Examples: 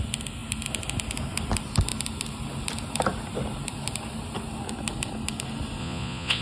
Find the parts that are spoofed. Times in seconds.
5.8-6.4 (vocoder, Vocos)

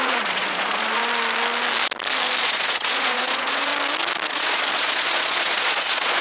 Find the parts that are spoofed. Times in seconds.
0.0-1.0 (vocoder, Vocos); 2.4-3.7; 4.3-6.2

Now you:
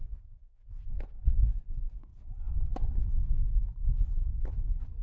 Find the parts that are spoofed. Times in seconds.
0.0-2.1 (vocoder, Vocos); 3.6-4.2